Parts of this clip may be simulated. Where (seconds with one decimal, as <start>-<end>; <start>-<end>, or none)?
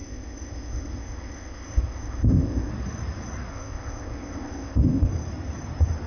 0.0-2.7; 3.5-5.1